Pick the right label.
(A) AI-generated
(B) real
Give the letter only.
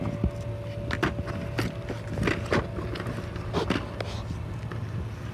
B